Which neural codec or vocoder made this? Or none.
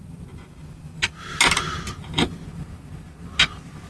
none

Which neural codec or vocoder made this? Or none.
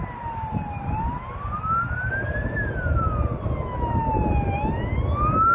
none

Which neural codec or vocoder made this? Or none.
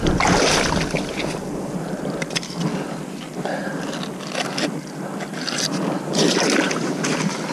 none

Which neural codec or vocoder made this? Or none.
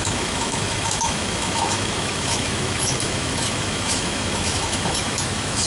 autoencoder, DAC-VAE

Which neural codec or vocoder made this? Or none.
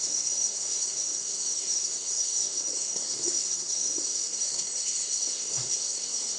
codec, SNAC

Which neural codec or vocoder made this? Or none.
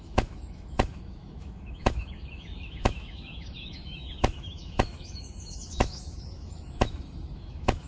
autoencoder, DAC-VAE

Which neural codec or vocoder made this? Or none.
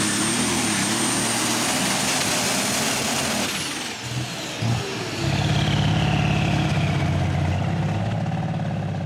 none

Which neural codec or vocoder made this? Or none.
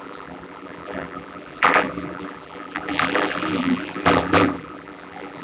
vocoder, BigVGAN v2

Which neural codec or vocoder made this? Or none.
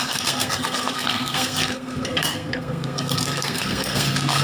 codec, SNAC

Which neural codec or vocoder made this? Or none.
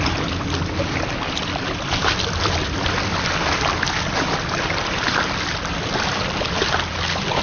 none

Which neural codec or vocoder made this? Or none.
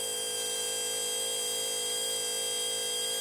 none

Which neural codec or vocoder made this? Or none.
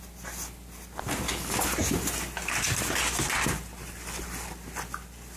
none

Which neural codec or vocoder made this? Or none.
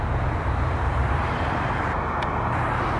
vocoder, BigVGAN v2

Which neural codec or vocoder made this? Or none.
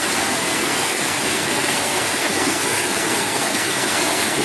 codec, SNAC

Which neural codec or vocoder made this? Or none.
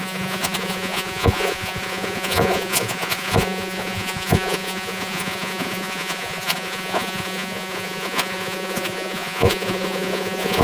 vocoder, Vocos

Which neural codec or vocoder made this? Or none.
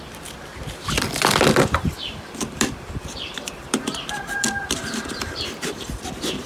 vocoder, BigVGAN v2